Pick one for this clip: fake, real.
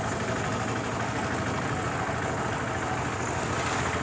real